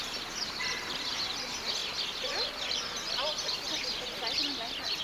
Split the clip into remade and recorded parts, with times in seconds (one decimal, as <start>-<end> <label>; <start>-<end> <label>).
0.0-5.0 recorded